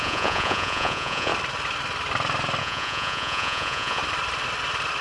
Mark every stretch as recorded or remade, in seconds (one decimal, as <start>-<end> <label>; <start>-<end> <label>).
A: 0.0-1.3 remade; 1.3-2.6 recorded; 2.6-4.0 remade; 4.0-5.0 recorded